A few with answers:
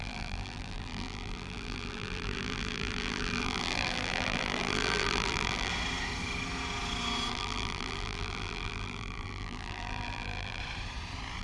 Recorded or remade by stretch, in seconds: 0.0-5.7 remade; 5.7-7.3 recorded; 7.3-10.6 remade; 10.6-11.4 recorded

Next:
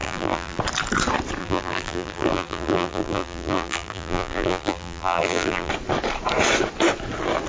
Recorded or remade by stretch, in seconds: 0.0-0.6 remade; 0.6-1.4 recorded; 1.4-5.7 remade; 5.7-7.5 recorded

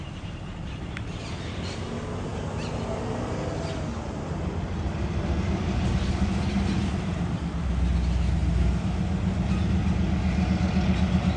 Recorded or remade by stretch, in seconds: 0.0-11.4 recorded

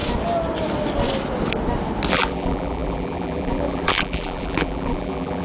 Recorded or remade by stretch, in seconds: 0.0-2.1 recorded; 2.1-5.4 remade

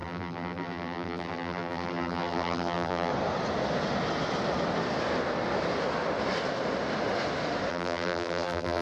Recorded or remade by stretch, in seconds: 0.0-3.1 remade; 3.1-7.7 recorded; 7.7-8.8 remade